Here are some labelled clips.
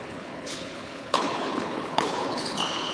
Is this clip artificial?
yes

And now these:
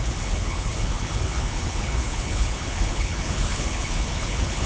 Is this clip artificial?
yes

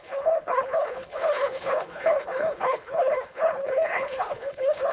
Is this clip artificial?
yes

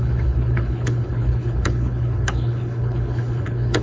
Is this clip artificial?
yes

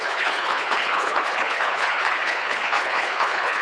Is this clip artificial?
yes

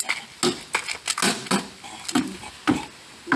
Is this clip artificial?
no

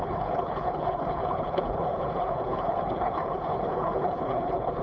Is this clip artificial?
yes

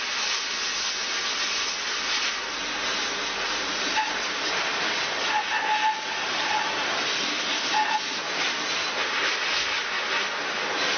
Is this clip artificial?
no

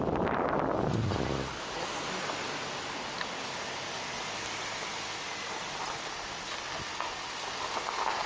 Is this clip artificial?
no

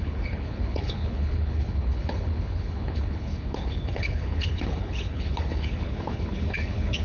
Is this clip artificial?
yes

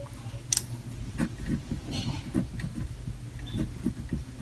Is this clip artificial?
no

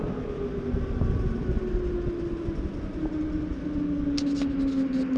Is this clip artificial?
no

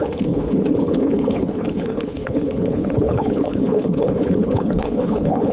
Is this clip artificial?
yes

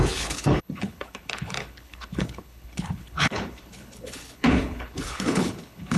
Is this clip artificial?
yes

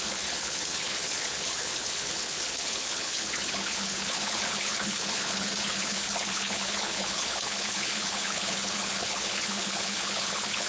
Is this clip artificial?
yes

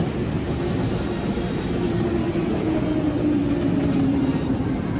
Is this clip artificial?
no